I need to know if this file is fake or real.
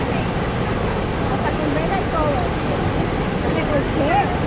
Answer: real